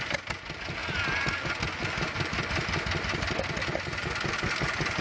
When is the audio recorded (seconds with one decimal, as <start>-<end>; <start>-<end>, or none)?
0.0-5.0